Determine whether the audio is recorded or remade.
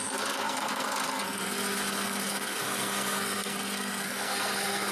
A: remade